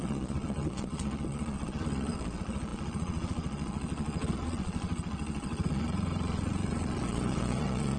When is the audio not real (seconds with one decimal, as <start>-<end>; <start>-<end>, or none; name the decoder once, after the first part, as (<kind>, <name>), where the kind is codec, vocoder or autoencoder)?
0.0-8.0 (vocoder, Vocos)